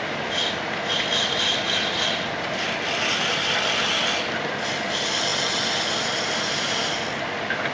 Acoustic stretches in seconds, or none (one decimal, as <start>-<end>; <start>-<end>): none